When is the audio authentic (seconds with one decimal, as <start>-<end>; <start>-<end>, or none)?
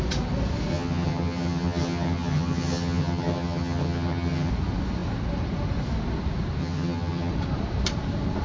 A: 0.0-0.7; 4.5-6.6; 7.3-8.4